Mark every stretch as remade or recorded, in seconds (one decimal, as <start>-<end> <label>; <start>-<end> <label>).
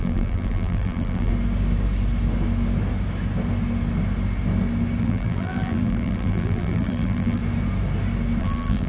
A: 0.0-1.3 remade; 1.3-5.0 recorded; 5.0-7.4 remade; 7.4-8.4 recorded; 8.4-8.9 remade